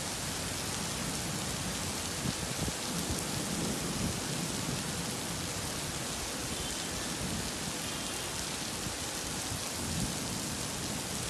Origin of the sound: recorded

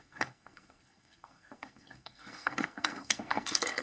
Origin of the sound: remade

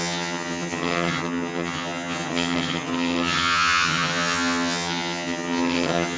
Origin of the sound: remade